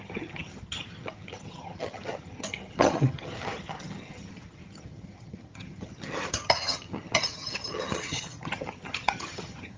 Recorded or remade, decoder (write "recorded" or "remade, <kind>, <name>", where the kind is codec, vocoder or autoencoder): remade, vocoder, HiFi-GAN